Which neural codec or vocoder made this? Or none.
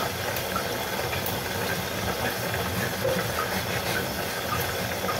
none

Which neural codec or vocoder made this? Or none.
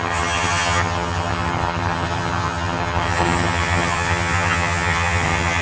vocoder, HiFi-GAN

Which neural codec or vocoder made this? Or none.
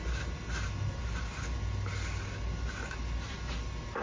none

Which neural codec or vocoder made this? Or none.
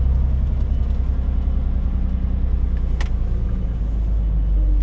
none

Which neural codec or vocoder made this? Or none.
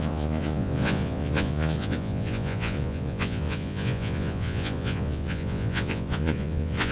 vocoder, Vocos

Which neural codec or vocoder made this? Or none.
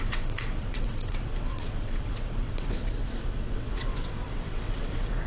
vocoder, WaveNeXt